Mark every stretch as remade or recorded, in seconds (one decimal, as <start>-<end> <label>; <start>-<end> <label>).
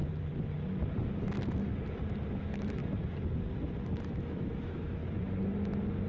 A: 0.0-1.0 recorded; 1.0-1.7 remade; 1.7-2.4 recorded; 2.4-2.8 remade; 2.8-4.0 recorded; 4.0-5.0 remade; 5.0-6.1 recorded